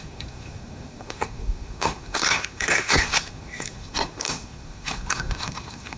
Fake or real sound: fake